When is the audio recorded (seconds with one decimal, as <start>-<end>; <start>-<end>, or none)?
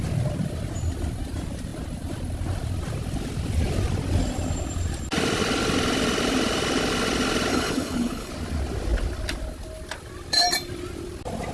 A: 0.0-7.5; 8.3-11.5